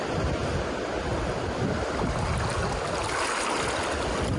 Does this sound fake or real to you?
real